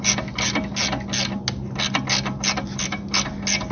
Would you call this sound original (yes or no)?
yes